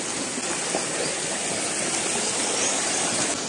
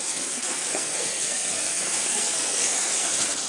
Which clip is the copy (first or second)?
second